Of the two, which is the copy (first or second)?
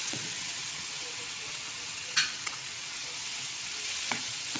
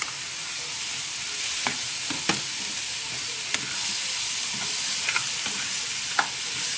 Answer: first